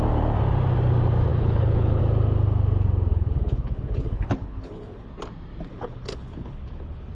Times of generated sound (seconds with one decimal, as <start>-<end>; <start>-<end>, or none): 1.3-2.0; 3.1-5.1; 5.7-7.1